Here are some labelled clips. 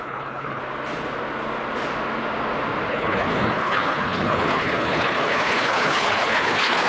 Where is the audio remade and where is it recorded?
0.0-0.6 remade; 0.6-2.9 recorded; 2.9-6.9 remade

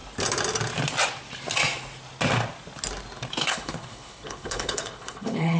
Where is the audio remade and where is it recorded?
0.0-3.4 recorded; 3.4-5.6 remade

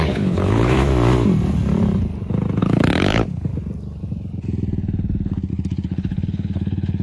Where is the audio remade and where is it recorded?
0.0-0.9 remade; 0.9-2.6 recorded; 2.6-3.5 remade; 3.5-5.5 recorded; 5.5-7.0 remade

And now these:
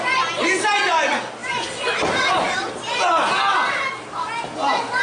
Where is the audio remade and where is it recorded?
0.0-5.0 recorded

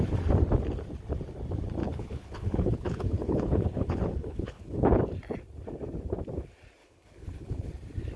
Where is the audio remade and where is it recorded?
0.0-1.8 recorded; 1.8-5.0 remade; 5.0-6.8 recorded; 6.8-7.7 remade; 7.7-8.2 recorded

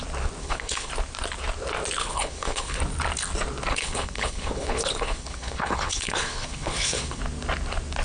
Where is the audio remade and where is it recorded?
0.0-0.4 recorded; 0.4-0.9 remade; 0.9-2.0 recorded; 2.0-2.8 remade; 2.8-3.7 recorded; 3.7-7.2 remade; 7.2-8.0 recorded